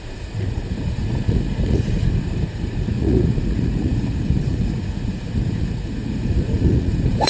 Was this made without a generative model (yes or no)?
no